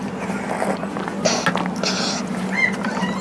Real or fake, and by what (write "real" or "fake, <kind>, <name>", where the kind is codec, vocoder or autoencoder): real